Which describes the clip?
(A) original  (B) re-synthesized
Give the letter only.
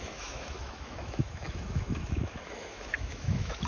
B